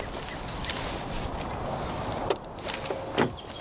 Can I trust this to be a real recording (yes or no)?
yes